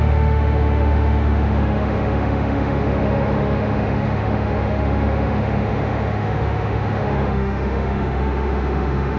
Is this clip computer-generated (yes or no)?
yes